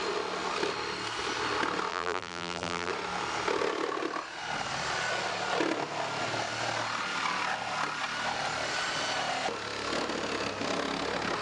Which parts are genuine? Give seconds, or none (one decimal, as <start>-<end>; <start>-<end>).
0.0-1.9; 2.9-11.4